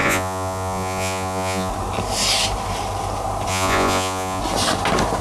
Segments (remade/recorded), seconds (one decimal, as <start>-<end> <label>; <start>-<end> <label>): 0.0-1.7 remade; 1.7-3.5 recorded; 3.5-4.4 remade; 4.4-5.2 recorded